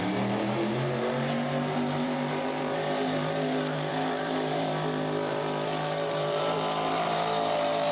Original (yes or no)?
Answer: no